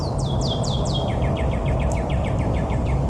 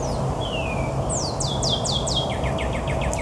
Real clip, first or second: second